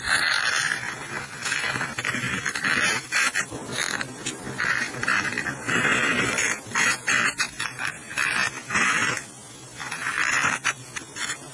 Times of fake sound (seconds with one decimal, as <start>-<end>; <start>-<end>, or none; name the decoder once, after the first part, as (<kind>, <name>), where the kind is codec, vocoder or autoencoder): none

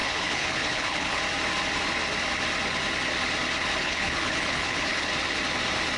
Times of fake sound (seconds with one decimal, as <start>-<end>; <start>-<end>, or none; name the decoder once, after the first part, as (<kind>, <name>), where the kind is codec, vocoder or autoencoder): 0.0-1.2 (codec, HILCodec); 3.8-5.1

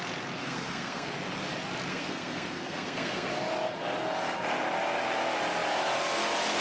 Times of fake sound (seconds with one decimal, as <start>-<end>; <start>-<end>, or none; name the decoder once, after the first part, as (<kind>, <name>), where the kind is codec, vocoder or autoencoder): 0.4-1.1 (codec, SNAC); 1.9-3.3

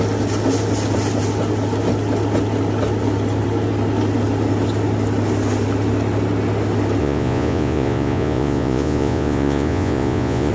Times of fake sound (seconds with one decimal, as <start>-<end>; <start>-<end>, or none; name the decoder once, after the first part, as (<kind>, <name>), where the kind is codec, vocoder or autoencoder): 7.0-10.5 (vocoder, Vocos)

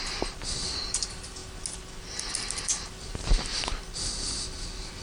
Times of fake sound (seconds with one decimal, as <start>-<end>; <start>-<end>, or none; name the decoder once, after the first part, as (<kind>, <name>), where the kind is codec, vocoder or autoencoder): none

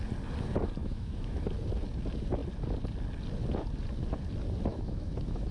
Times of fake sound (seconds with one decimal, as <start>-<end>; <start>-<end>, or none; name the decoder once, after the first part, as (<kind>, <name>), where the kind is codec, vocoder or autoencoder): 0.8-1.4 (autoencoder, DAC-VAE); 4.7-5.5

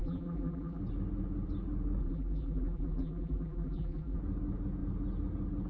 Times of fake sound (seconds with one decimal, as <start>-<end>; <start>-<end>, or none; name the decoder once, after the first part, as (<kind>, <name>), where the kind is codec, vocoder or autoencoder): 0.0-0.8 (vocoder, BigVGAN v2); 2.0-4.2

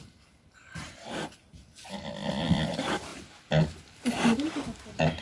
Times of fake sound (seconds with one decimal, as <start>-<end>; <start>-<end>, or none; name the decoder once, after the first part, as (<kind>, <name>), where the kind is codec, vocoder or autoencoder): none